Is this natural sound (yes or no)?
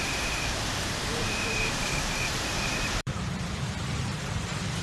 no